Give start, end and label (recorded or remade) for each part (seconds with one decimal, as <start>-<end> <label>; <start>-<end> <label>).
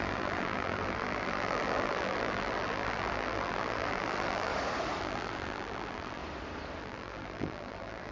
0.0-4.5 remade; 4.5-5.0 recorded; 5.0-6.2 remade; 6.2-6.8 recorded; 6.8-8.1 remade